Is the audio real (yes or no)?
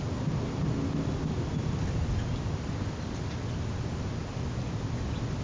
yes